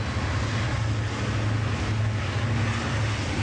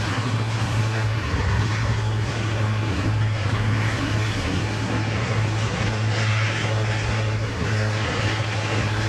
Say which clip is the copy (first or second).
second